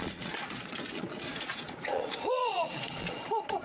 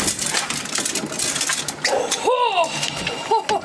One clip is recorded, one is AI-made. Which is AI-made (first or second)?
first